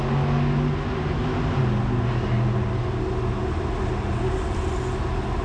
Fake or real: real